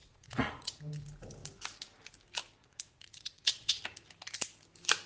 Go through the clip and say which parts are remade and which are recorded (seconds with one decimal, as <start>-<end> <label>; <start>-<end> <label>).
0.0-0.8 remade; 0.8-2.6 recorded; 2.6-3.8 remade; 3.8-5.1 recorded